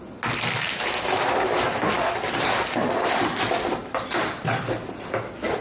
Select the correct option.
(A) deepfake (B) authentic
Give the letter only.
B